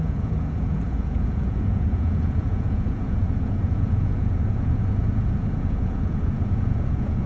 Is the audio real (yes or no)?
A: no